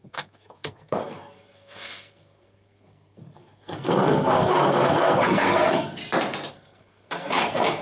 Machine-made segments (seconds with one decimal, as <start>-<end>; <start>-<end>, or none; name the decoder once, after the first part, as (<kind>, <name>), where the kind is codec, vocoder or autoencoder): 0.0-6.0 (codec, SNAC); 6.5-7.8